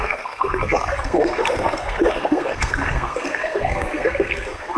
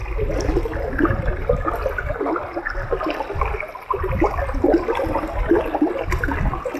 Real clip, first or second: second